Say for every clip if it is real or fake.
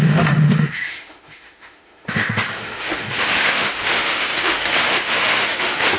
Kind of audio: fake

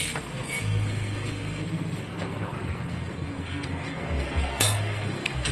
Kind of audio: fake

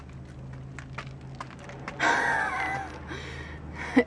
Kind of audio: real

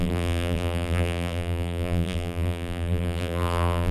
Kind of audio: fake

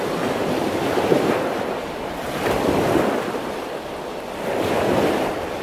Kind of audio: real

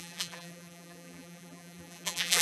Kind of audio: fake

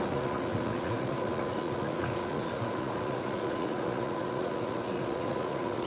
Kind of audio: fake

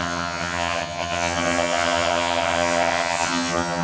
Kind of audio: fake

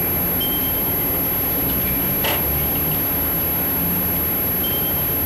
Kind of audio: real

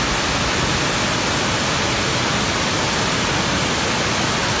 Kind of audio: real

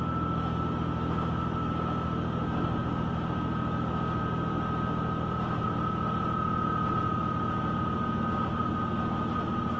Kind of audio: real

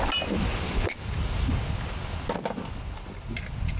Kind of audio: real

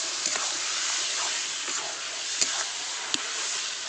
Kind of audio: fake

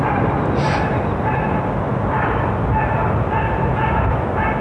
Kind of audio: real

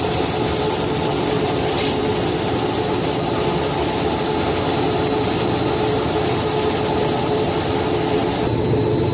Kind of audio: real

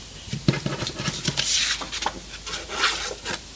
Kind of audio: real